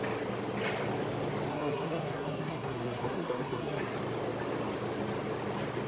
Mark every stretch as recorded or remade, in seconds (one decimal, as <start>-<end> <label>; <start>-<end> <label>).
0.0-1.5 recorded; 1.5-3.8 remade; 3.8-5.9 recorded